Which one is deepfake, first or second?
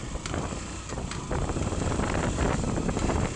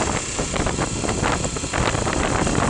first